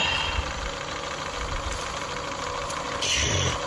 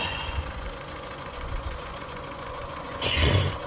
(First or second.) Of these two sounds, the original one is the first